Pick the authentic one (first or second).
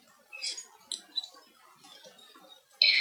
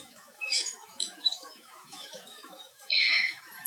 first